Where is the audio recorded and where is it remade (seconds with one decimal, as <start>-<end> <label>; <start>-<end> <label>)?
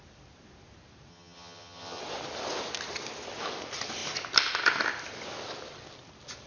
0.0-1.1 recorded; 1.1-2.0 remade; 2.0-6.5 recorded